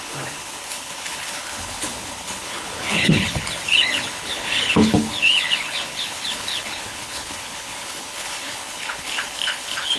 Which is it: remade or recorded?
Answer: remade